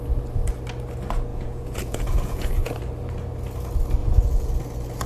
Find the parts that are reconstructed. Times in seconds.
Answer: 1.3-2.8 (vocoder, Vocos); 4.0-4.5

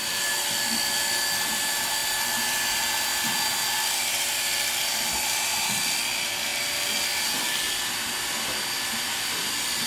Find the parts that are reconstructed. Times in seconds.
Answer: none

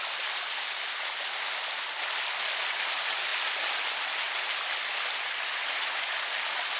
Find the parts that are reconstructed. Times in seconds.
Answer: none